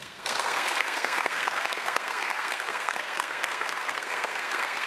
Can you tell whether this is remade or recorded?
remade